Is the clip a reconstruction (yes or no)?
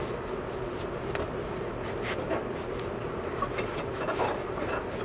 no